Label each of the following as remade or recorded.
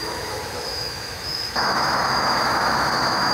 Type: remade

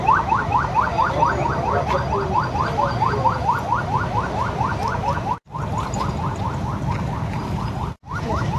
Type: recorded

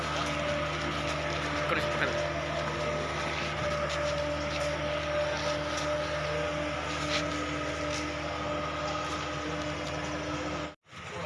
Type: recorded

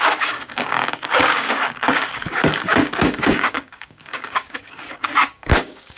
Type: remade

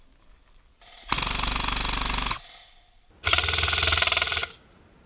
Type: recorded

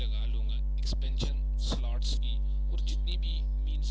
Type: recorded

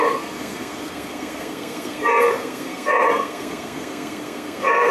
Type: remade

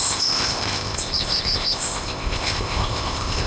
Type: remade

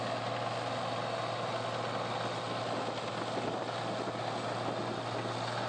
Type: recorded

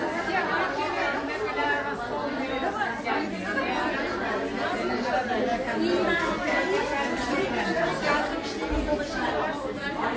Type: recorded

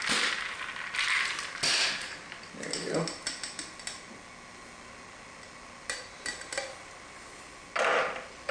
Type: recorded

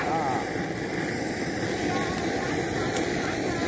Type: recorded